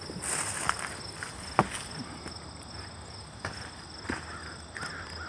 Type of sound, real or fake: real